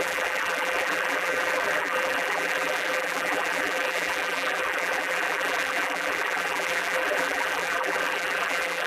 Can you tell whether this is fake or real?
fake